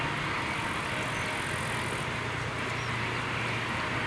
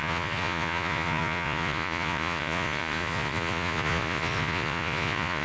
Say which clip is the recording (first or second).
first